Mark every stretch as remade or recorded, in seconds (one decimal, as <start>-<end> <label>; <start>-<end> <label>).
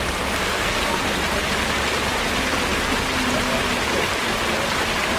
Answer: 0.0-0.5 recorded; 0.5-1.0 remade; 1.0-5.2 recorded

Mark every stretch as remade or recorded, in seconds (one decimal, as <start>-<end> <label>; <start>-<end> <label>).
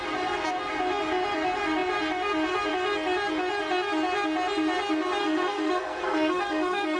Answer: 0.0-5.2 recorded; 5.2-7.0 remade